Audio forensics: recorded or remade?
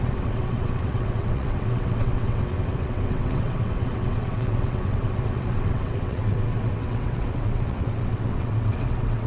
remade